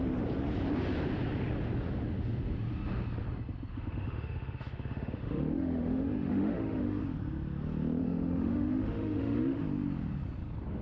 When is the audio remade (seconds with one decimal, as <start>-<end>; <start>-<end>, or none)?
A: 3.7-7.0; 8.0-9.6